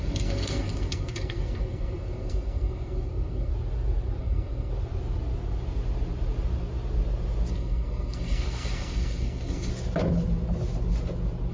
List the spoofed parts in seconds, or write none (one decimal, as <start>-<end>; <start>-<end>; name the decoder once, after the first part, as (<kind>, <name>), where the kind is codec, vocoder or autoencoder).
0.0-3.5 (codec, SNAC); 4.2-4.7; 7.5-9.7